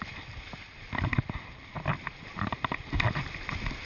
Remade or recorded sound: remade